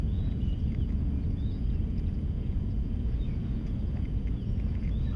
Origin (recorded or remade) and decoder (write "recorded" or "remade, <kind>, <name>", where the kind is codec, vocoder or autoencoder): remade, vocoder, Vocos